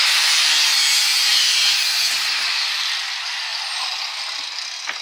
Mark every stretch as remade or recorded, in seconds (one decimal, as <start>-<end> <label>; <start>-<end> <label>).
0.0-1.3 recorded; 1.3-1.8 remade; 1.8-5.0 recorded